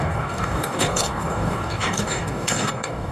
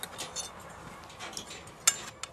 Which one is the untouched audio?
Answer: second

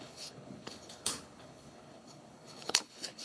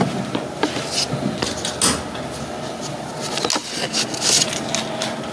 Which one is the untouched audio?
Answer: second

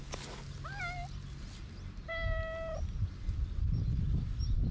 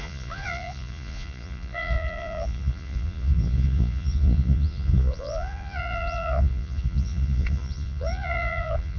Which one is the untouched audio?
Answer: first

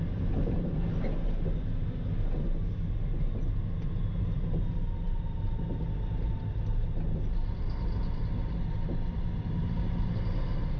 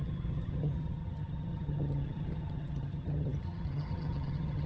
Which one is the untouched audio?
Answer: first